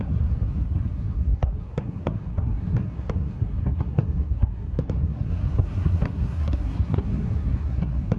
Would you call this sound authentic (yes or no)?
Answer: no